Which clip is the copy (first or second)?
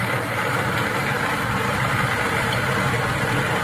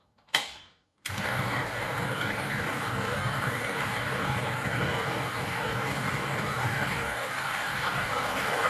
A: second